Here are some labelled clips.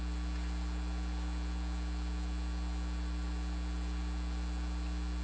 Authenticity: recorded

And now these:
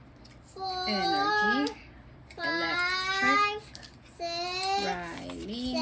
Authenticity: recorded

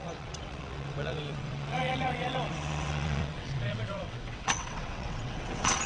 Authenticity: remade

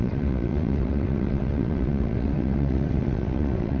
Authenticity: remade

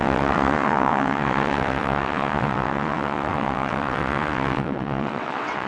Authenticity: remade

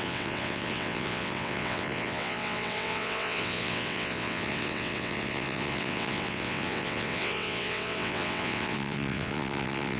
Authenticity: remade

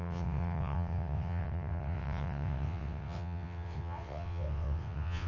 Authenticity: remade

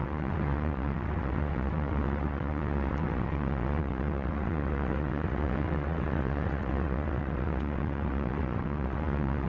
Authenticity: remade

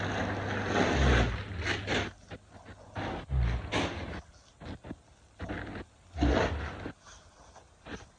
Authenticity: recorded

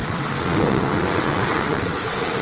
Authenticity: remade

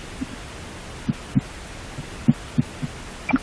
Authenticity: recorded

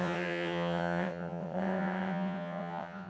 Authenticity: remade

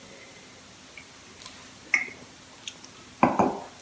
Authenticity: recorded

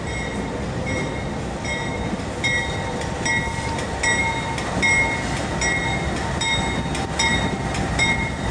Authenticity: recorded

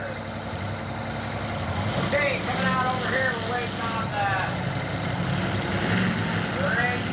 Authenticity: recorded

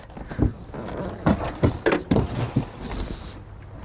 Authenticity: recorded